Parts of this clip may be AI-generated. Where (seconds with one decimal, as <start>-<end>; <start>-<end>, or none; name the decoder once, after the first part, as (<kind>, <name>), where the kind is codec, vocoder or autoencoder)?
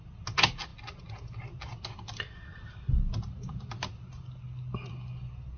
none